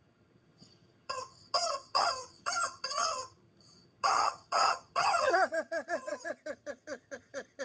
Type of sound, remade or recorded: remade